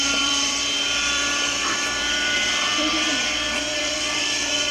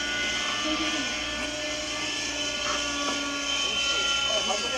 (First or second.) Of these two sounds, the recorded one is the second